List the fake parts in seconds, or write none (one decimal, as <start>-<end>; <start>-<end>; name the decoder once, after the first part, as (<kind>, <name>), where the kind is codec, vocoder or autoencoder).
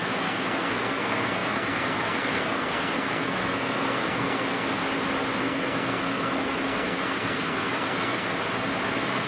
0.0-4.8 (codec, SNAC); 5.4-8.3; 8.9-9.3